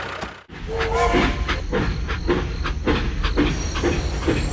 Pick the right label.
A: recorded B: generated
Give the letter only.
A